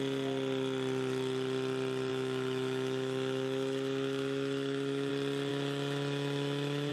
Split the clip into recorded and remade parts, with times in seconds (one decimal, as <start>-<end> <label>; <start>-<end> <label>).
0.0-2.1 recorded; 2.1-5.1 remade; 5.1-5.5 recorded; 5.5-6.9 remade